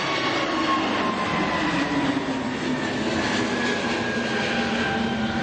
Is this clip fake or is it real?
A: real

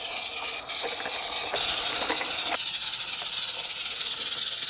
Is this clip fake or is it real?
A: real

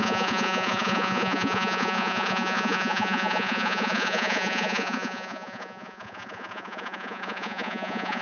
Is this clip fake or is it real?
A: fake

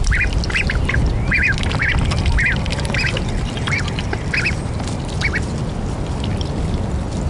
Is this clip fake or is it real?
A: real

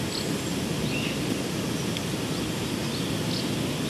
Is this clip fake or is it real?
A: real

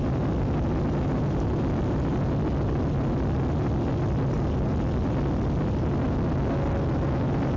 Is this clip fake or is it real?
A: real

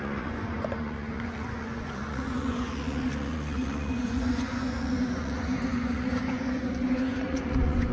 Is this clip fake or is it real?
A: fake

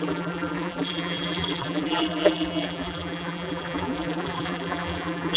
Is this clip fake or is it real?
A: fake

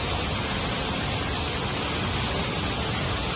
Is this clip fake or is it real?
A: real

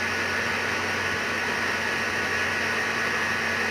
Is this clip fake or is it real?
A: real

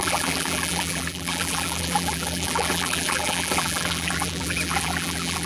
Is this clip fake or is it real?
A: fake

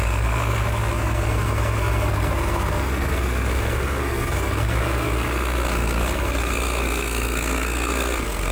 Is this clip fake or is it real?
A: fake